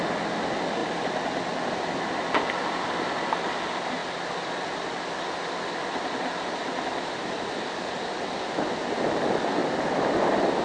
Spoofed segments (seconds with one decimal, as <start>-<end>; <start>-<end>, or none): none